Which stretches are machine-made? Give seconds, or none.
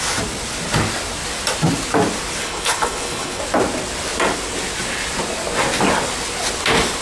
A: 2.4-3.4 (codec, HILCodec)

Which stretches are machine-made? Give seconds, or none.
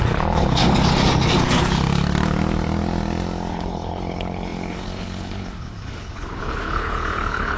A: 0.0-0.6 (codec, HILCodec); 3.5-7.6